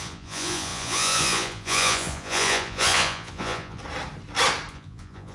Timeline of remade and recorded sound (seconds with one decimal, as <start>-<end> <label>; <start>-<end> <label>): 0.0-3.8 remade; 3.8-4.7 recorded; 4.7-5.3 remade